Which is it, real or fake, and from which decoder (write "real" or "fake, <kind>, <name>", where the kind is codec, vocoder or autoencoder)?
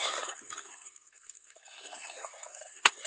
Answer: fake, codec, SNAC